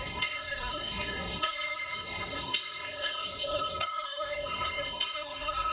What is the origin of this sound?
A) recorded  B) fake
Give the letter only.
B